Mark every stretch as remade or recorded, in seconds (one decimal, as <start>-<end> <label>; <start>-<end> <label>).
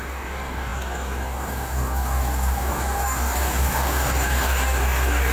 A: 0.0-5.3 remade